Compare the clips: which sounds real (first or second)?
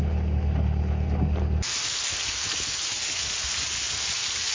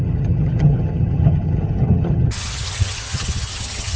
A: first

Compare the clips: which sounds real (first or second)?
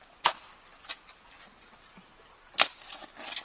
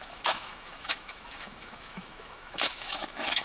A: first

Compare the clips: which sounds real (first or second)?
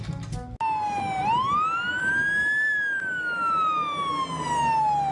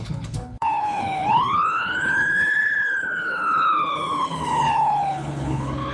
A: first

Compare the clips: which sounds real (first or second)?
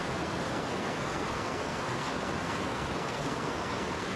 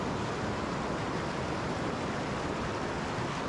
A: second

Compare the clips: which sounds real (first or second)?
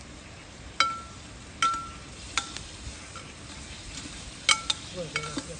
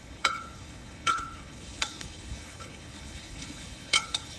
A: first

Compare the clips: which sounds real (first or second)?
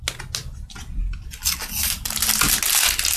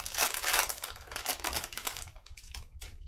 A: first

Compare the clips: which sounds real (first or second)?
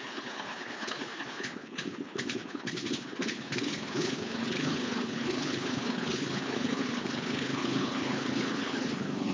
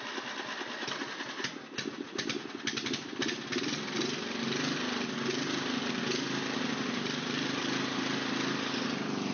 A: second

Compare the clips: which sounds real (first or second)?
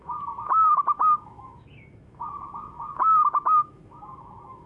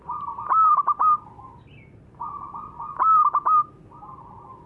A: second